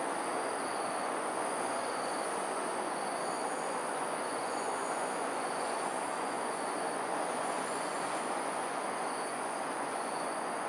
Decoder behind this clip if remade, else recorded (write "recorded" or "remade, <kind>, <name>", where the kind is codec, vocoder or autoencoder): remade, vocoder, Vocos